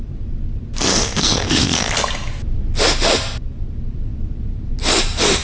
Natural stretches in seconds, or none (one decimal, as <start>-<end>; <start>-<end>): 0.0-0.9; 1.9-5.4